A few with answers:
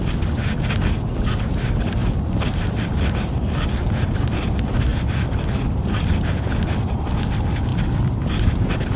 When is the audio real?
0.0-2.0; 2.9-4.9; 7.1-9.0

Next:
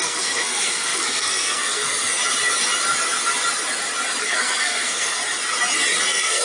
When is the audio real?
2.2-4.2; 5.2-6.0

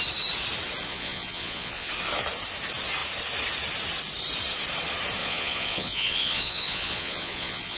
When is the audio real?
0.0-0.9; 1.9-5.2

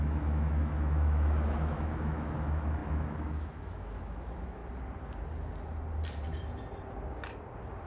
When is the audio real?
4.6-7.9

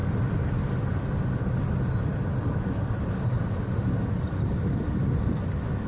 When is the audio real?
0.0-5.9